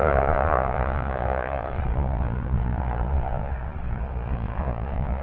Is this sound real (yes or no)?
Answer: no